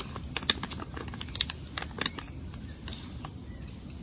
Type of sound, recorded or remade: recorded